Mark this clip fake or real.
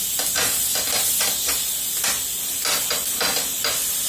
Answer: real